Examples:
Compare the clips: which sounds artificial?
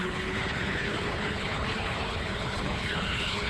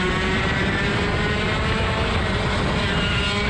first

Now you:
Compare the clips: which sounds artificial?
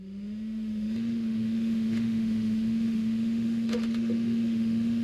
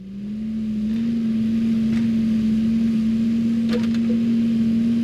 first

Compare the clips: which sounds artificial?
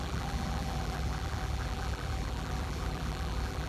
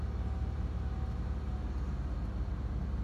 first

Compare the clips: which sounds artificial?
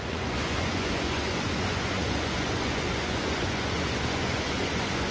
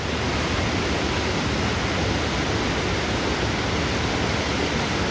first